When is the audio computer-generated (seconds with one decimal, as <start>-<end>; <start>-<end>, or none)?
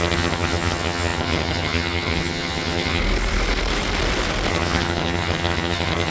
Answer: 0.0-3.0; 4.5-6.1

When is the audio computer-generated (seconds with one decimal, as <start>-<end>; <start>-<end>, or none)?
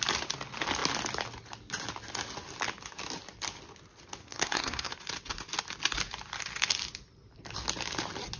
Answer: 4.2-4.9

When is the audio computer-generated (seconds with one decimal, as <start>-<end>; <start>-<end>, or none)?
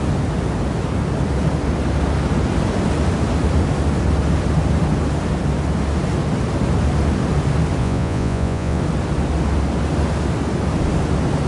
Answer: 7.8-8.8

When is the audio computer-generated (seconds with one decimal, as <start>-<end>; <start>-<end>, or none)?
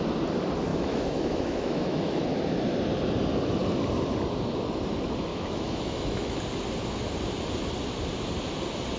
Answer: 0.7-2.2; 5.3-6.4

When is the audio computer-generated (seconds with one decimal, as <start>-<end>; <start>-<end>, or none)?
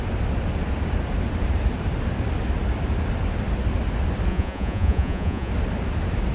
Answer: 4.3-5.5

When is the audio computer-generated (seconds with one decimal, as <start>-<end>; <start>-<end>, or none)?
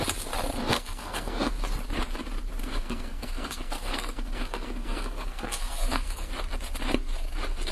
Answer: 0.7-1.5; 2.6-6.3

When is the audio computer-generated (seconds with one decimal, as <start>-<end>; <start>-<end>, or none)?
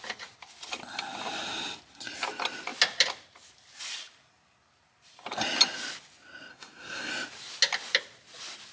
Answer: 6.5-7.1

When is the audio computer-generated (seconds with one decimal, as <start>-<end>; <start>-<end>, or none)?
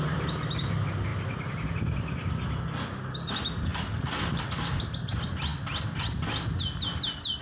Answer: none